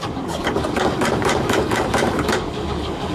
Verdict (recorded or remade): remade